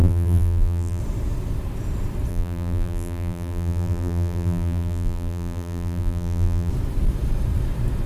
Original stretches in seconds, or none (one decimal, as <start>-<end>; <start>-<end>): 1.0-2.3; 6.7-8.1

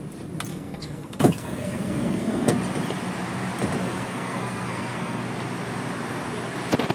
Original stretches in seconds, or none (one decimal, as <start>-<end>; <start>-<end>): 0.0-0.5; 2.6-3.8; 5.2-6.9

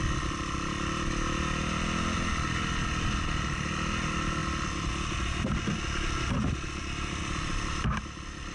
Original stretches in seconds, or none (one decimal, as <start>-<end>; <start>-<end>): 0.0-8.5

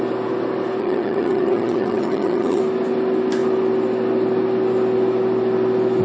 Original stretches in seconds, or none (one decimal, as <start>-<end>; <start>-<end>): 0.0-0.8; 2.6-6.0

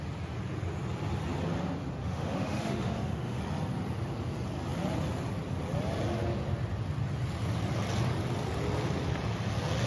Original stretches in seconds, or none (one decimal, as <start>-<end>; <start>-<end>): 0.0-2.0; 3.4-9.9

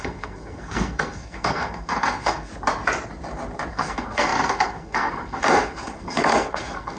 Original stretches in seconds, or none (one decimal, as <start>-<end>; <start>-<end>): 2.5-3.7